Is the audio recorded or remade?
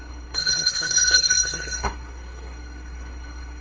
remade